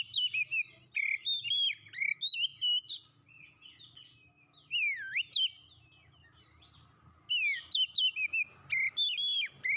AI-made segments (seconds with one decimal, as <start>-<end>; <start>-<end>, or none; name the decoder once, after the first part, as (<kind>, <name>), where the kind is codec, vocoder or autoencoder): none